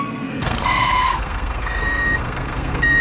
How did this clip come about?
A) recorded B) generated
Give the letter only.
B